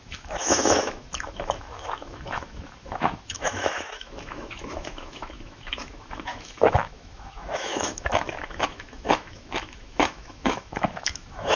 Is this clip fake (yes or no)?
yes